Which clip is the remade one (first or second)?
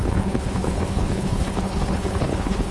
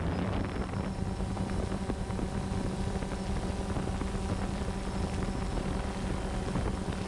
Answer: first